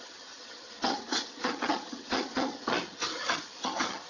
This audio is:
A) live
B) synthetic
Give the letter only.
B